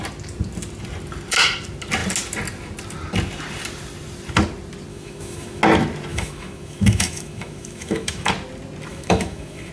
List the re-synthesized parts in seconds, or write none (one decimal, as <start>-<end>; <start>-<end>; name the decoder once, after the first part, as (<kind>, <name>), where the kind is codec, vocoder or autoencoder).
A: 4.9-5.6 (autoencoder, DAC-VAE); 6.1-8.3; 8.9-9.7

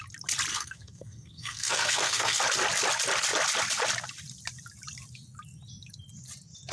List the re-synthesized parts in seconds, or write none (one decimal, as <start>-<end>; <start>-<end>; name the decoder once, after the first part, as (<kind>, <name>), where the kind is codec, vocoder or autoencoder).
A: 0.5-2.4 (codec, SNAC)

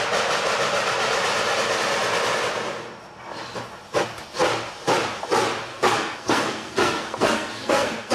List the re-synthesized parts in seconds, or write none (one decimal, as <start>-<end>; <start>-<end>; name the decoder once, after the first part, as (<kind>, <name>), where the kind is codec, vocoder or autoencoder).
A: 5.7-8.1 (codec, SNAC)

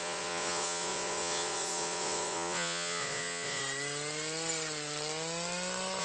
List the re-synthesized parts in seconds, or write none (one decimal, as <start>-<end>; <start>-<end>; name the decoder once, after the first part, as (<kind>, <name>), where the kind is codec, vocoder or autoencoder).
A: 0.0-3.6 (vocoder, Vocos)

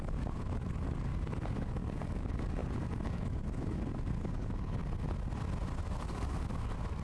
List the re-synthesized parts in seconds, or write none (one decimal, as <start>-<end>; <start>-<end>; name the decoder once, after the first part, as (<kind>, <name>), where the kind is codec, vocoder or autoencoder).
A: 0.0-1.1 (codec, DAC); 1.6-4.8; 5.8-7.0

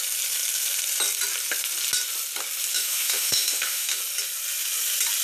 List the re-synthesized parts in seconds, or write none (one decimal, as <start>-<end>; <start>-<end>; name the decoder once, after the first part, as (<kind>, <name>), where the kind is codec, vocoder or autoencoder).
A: 2.7-4.0 (autoencoder, DAC-VAE)